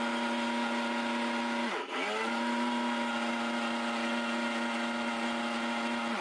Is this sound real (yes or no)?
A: yes